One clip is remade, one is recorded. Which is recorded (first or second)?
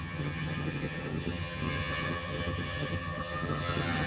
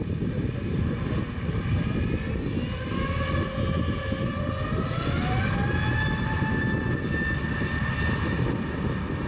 second